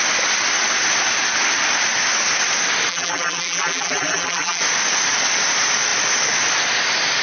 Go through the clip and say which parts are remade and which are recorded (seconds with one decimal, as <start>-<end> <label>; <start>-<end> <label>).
0.0-2.9 recorded; 2.9-4.6 remade; 4.6-7.2 recorded